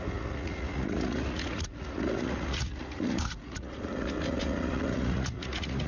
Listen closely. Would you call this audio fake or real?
fake